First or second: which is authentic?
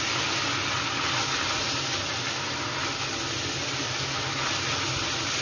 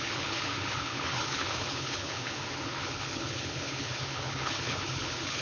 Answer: first